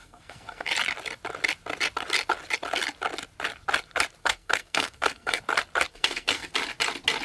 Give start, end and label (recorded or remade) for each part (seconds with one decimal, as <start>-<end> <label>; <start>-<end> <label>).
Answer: 0.0-0.7 remade; 0.7-4.2 recorded; 4.2-5.4 remade; 5.4-5.9 recorded; 5.9-6.5 remade; 6.5-7.2 recorded